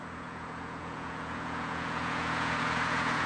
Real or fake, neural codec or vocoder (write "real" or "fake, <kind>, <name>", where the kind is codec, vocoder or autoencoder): fake, vocoder, Vocos